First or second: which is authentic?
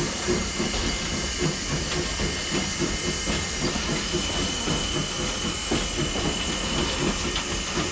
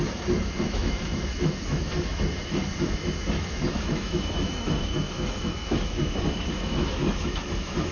first